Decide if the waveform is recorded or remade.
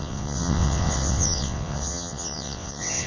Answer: remade